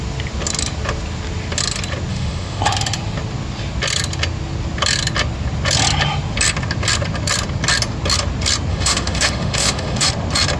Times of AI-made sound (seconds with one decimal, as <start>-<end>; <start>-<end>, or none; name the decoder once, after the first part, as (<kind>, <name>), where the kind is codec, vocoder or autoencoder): 2.1-2.6 (autoencoder, DAC-VAE); 8.7-10.1